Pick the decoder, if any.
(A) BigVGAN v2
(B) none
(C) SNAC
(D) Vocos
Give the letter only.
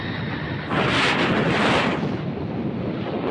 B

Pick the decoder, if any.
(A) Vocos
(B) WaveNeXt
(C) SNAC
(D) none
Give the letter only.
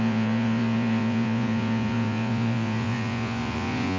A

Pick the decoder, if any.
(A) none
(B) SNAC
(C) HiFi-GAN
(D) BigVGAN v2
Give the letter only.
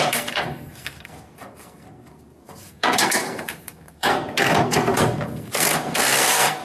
B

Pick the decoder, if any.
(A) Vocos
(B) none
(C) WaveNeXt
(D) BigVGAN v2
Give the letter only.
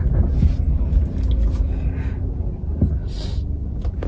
B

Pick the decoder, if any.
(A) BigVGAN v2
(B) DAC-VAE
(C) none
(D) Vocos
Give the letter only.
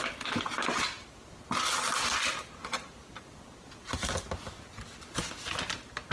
C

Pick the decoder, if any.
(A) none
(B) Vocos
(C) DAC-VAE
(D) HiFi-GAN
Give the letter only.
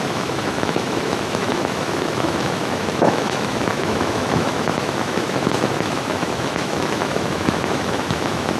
C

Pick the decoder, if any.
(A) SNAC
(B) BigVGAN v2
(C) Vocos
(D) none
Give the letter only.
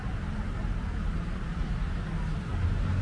D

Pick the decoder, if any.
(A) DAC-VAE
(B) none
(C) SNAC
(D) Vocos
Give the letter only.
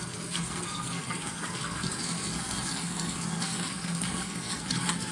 C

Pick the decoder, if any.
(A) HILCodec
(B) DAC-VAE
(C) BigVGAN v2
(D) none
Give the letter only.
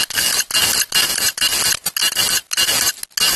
D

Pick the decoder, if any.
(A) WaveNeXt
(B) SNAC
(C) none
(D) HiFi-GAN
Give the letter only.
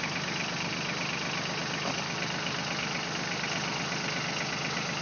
C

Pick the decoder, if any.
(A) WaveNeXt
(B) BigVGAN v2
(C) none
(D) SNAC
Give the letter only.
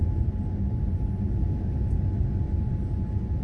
C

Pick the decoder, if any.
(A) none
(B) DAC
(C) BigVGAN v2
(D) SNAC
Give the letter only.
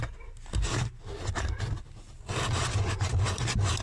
A